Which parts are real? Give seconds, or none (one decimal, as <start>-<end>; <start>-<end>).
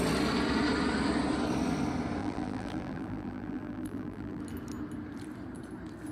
0.0-2.2; 4.4-6.1